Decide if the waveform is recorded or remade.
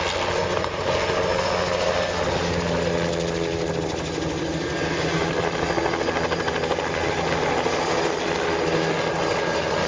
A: recorded